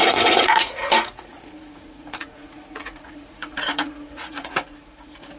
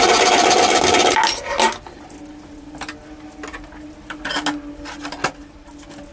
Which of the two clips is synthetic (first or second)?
first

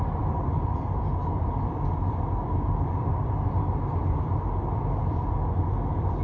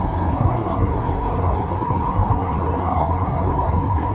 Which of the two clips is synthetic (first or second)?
second